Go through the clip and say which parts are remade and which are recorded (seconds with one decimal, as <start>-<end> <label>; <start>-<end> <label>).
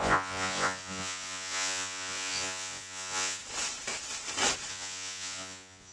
0.0-3.4 remade; 3.4-4.7 recorded; 4.7-5.9 remade